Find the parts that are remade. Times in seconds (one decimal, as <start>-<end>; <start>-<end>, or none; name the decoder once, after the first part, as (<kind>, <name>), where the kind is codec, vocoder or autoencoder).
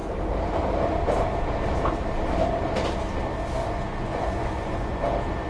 3.6-5.0 (vocoder, Vocos)